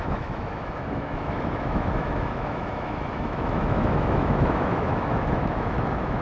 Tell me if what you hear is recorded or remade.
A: remade